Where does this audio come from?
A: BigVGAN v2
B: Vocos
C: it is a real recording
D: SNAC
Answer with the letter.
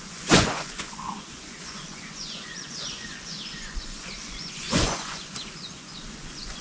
B